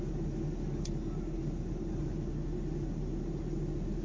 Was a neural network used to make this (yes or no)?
no